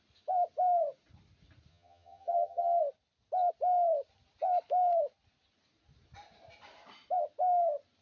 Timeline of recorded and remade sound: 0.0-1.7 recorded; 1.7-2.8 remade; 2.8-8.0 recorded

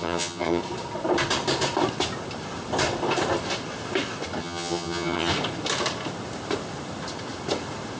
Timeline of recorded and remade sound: 0.0-0.6 remade; 0.6-4.4 recorded; 4.4-5.3 remade; 5.3-8.0 recorded

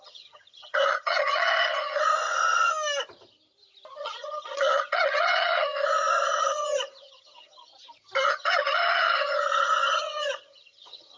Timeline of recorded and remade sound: 0.0-2.1 remade; 2.1-4.0 recorded; 4.0-7.7 remade; 7.7-8.3 recorded; 8.3-11.2 remade

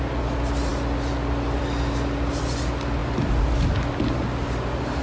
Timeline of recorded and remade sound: 0.0-5.0 recorded

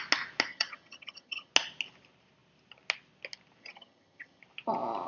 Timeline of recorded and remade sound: 0.0-0.5 recorded; 0.5-1.5 remade; 1.5-3.6 recorded; 3.6-4.4 remade; 4.4-5.1 recorded